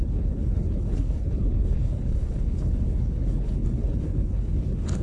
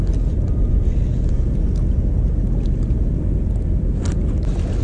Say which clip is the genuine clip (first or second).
second